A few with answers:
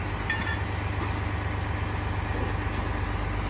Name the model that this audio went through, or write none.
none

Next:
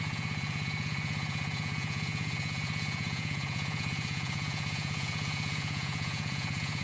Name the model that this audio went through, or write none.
vocoder, Vocos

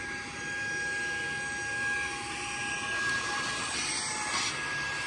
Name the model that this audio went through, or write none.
none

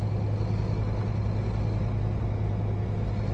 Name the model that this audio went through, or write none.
none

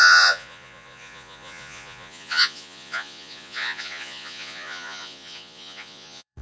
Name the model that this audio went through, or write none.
vocoder, Vocos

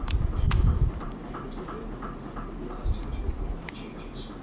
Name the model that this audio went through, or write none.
none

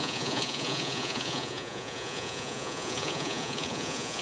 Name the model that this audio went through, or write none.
vocoder, Vocos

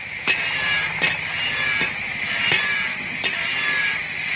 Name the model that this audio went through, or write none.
none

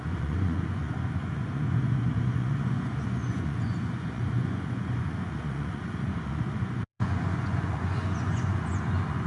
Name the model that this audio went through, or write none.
vocoder, Vocos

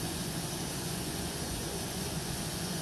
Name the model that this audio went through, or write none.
vocoder, Vocos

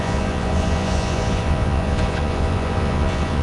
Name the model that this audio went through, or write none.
vocoder, Vocos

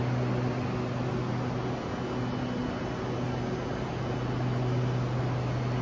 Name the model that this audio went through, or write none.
none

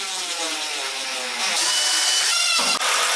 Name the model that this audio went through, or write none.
none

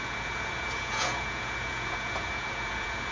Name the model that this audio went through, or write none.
vocoder, Vocos